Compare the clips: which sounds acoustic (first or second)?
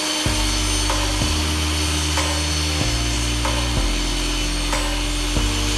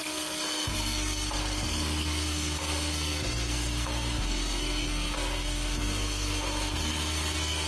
first